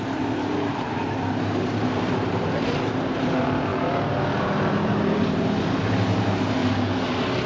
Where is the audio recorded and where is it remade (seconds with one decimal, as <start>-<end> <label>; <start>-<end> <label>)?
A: 0.0-3.7 remade; 3.7-4.4 recorded; 4.4-6.6 remade; 6.6-7.5 recorded